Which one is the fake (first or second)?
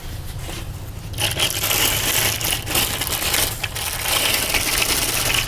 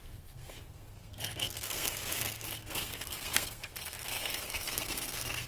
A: second